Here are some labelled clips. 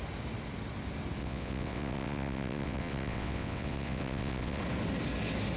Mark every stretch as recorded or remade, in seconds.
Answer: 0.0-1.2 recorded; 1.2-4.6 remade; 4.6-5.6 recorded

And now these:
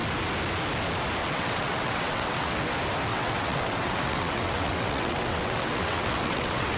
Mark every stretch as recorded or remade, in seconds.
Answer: 0.0-1.2 recorded; 1.2-2.7 remade; 2.7-3.1 recorded; 3.1-6.8 remade

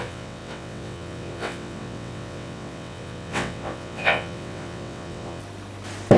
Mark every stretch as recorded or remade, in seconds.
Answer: 0.0-5.4 remade; 5.4-6.2 recorded